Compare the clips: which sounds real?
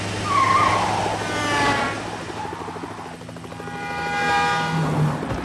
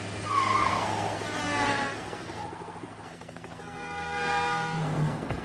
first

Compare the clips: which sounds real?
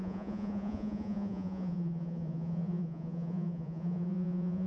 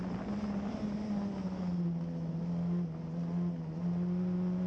second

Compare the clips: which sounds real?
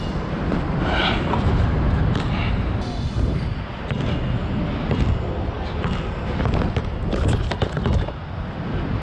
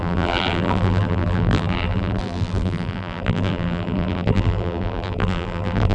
first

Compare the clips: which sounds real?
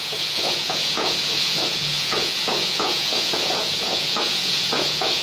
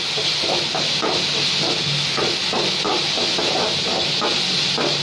second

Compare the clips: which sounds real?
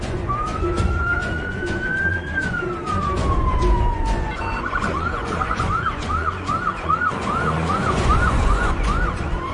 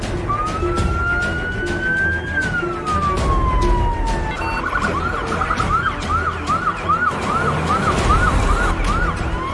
second